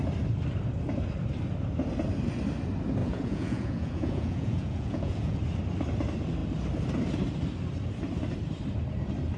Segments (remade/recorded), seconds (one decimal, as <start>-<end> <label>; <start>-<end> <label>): 0.0-3.0 recorded; 3.0-5.4 remade; 5.4-9.4 recorded